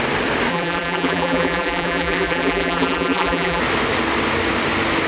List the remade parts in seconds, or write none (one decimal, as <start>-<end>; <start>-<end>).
0.5-3.6